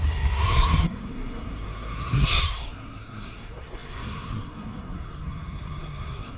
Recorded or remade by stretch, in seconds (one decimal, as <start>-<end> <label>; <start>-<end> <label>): 0.0-6.4 remade